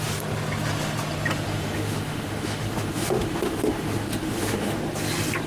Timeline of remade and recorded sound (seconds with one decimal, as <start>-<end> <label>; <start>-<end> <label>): 0.0-1.5 recorded; 1.5-4.8 remade; 4.8-5.5 recorded